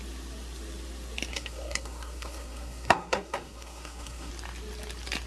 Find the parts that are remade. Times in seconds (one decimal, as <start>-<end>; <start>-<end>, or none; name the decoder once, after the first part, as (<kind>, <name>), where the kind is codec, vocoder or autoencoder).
1.3-4.3 (codec, SNAC)